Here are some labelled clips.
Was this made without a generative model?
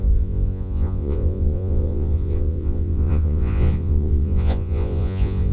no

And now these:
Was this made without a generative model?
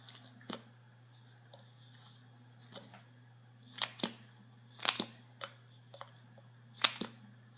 yes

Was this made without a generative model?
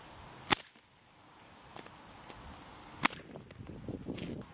yes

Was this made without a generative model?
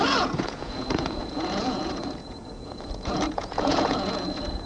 no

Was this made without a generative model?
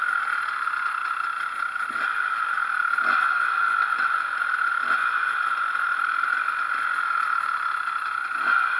yes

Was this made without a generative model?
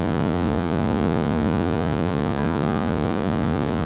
no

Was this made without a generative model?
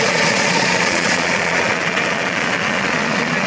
no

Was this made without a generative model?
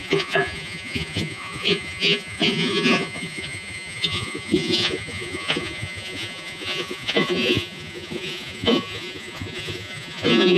no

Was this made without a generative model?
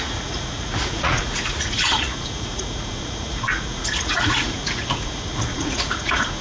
no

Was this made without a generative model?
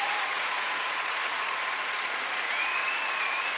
no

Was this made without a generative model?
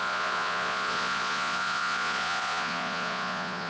no